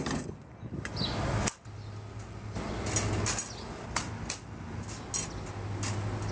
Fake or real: real